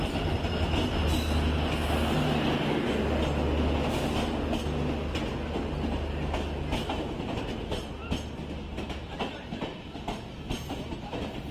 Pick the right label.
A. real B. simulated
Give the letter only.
A